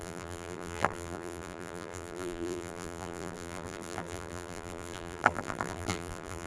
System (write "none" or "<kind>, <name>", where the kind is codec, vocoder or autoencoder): vocoder, BigVGAN v2